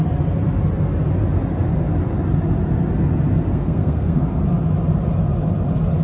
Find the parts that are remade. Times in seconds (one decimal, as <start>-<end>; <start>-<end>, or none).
3.5-4.4